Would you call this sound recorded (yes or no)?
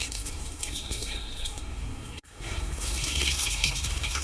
no